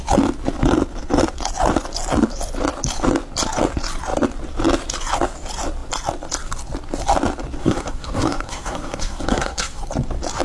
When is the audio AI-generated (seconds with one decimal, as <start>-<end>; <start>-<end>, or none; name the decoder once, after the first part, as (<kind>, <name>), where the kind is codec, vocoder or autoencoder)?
7.6-9.8 (codec, SNAC)